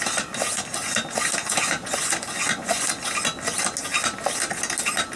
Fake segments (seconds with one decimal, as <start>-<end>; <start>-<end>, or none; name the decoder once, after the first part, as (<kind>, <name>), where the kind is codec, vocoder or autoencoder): 1.4-2.9 (vocoder, Vocos)